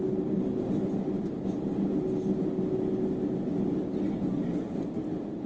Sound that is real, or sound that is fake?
real